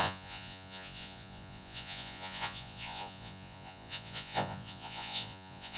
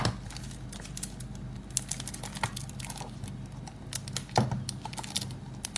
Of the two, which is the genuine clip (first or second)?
second